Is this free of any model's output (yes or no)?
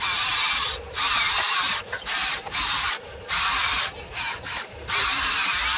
no